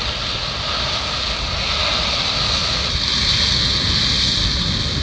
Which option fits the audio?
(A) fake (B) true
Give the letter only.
B